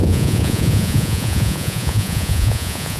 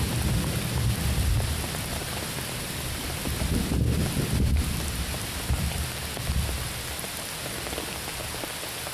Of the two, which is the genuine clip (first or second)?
second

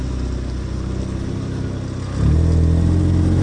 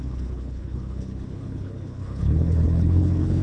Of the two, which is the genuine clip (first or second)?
first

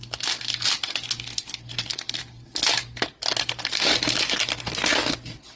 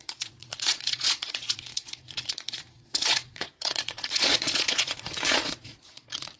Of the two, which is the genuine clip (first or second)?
first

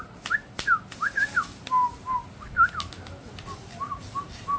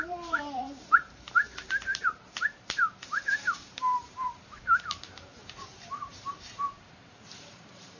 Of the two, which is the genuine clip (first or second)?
first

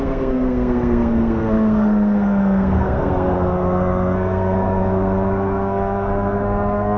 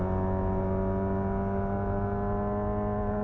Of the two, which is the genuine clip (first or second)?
second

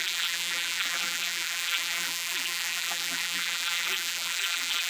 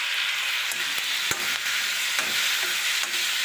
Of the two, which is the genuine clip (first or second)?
second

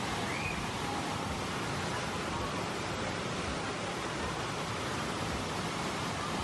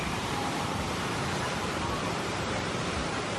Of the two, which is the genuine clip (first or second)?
first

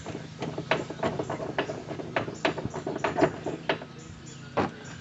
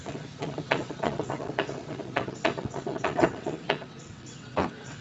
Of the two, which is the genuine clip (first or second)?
first